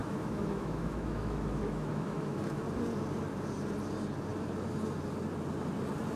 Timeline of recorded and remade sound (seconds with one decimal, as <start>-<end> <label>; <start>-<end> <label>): 0.0-2.6 remade; 2.6-6.2 recorded